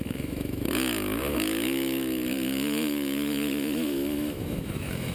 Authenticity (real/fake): fake